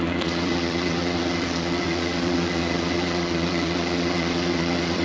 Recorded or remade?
remade